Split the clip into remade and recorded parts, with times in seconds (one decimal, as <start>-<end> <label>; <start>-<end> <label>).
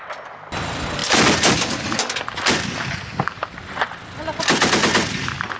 0.0-5.6 recorded